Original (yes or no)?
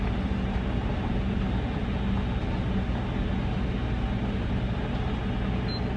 yes